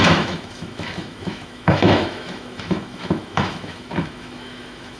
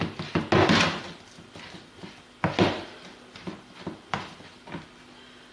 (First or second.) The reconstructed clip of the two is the first